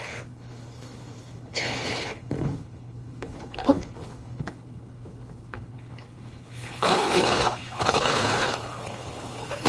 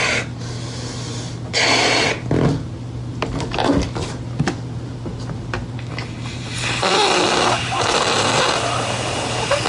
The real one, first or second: second